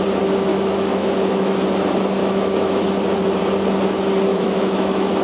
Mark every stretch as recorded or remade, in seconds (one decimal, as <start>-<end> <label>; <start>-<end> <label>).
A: 0.0-0.5 recorded; 0.5-1.6 remade; 1.6-2.2 recorded; 2.2-2.8 remade; 2.8-4.3 recorded; 4.3-5.2 remade